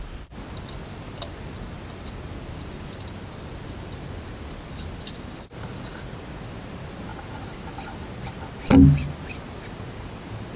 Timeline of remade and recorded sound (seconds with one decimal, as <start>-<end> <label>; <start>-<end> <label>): 0.0-10.6 recorded

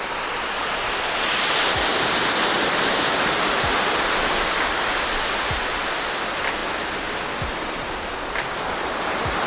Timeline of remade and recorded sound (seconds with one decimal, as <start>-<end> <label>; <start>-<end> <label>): 0.0-9.5 recorded

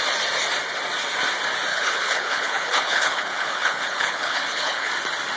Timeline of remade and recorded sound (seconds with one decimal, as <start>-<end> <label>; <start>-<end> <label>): 0.0-1.7 recorded; 1.7-4.9 remade; 4.9-5.4 recorded

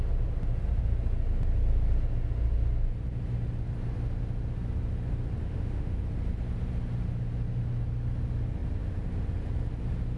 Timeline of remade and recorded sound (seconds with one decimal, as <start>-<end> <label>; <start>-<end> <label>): 0.0-5.4 recorded; 5.4-6.0 remade; 6.0-10.2 recorded

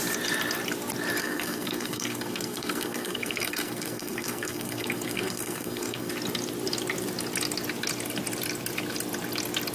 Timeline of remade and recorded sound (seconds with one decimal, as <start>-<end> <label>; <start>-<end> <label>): 0.0-1.2 recorded; 1.2-6.1 remade; 6.1-9.7 recorded

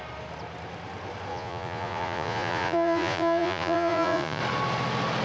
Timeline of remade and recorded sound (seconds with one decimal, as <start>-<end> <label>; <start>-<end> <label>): 0.0-1.3 recorded; 1.3-4.4 remade; 4.4-5.2 recorded

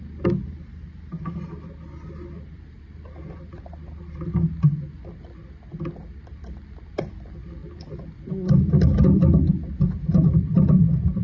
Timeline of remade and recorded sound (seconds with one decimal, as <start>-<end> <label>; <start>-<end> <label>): 0.0-11.2 recorded

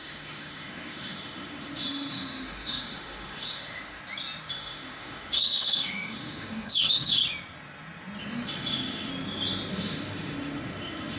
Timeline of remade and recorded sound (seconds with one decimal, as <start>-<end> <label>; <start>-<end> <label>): 0.0-4.0 remade; 4.0-4.5 recorded; 4.5-7.2 remade; 7.2-8.2 recorded; 8.2-9.1 remade; 9.1-9.7 recorded; 9.7-11.2 remade